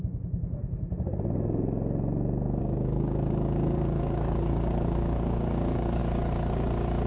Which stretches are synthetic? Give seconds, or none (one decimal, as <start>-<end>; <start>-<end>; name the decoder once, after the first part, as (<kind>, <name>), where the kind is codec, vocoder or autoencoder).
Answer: 0.0-0.6 (codec, DAC); 2.6-6.0